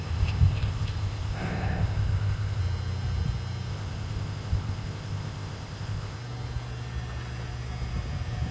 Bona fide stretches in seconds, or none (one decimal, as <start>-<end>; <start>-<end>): 2.6-3.7; 6.2-8.5